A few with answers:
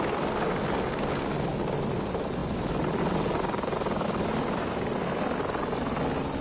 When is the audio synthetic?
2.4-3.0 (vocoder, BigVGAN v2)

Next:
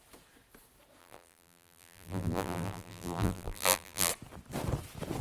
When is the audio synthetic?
1.0-4.1 (vocoder, BigVGAN v2)

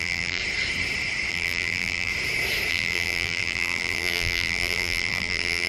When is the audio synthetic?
0.0-0.4 (vocoder, BigVGAN v2); 1.3-2.1; 2.7-5.7

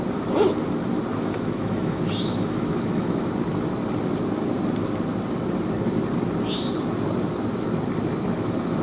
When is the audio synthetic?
1.1-3.3 (autoencoder, DAC-VAE)

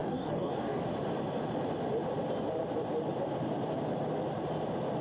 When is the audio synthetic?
0.0-0.8 (codec, DAC)

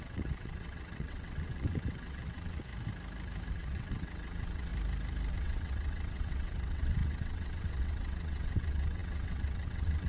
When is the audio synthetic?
0.0-2.7 (vocoder, WaveNeXt); 3.5-4.7; 5.3-10.1

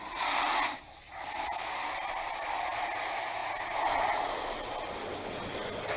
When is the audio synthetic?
none

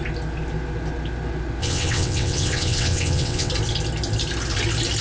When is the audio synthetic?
1.6-3.5 (vocoder, WaveNeXt)